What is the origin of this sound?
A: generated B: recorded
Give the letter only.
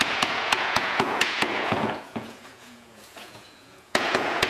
A